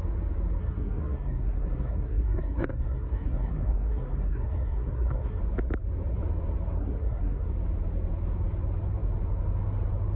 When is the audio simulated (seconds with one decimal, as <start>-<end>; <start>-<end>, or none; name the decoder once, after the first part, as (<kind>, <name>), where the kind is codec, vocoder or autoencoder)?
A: 0.6-5.4 (codec, SNAC); 6.8-7.5